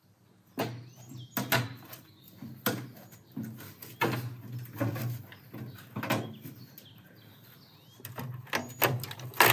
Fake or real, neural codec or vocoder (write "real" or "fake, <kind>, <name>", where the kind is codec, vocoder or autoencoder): real